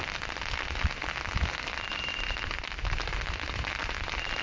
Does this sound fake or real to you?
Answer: real